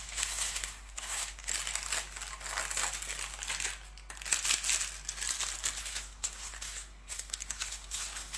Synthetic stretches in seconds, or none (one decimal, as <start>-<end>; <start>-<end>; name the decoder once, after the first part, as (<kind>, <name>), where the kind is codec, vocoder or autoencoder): 0.0-1.5 (codec, SNAC); 5.8-8.4